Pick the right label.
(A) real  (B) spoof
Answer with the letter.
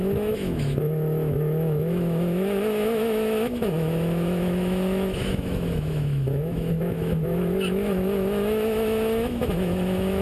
B